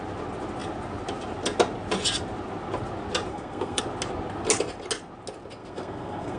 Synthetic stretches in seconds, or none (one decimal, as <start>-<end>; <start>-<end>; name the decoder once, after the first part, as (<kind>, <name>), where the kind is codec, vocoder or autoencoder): 3.3-3.8 (codec, SNAC); 5.6-6.4